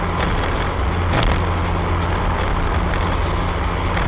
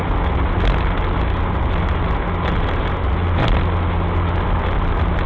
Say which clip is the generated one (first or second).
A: first